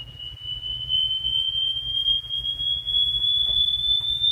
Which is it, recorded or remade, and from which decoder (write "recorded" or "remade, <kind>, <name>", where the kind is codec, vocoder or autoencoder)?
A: remade, vocoder, Vocos